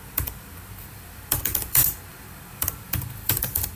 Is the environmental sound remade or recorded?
remade